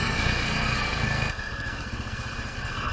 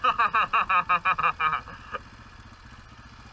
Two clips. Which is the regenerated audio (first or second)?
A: first